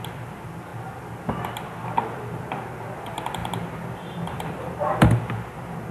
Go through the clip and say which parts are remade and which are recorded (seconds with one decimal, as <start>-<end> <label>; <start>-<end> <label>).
0.0-3.4 recorded; 3.4-5.0 remade; 5.0-5.9 recorded